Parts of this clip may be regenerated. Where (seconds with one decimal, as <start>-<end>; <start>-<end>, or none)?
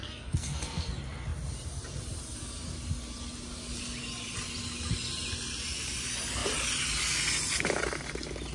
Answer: 0.0-0.9